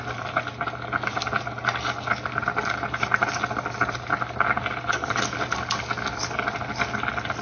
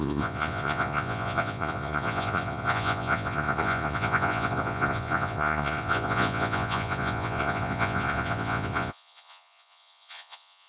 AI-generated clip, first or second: second